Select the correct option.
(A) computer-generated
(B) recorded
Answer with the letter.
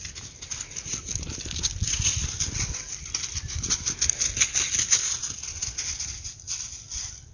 B